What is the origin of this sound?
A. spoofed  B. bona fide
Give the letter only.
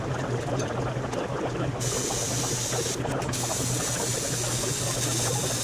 B